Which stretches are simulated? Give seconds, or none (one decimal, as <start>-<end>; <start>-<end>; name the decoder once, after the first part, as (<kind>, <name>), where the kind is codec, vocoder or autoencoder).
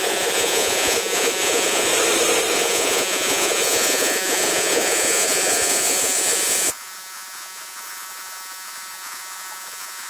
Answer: 0.0-1.9 (vocoder, Vocos); 2.5-10.1